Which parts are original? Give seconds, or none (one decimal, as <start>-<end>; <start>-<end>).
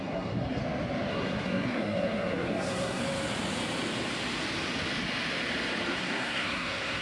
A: 0.6-1.1; 3.0-5.9